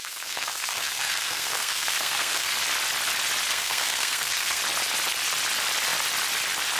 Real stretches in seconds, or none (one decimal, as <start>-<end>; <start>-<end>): 2.5-3.5; 4.6-6.8